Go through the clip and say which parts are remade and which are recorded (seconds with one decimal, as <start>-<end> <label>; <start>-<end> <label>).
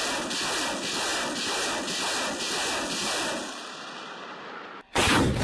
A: 0.0-5.4 recorded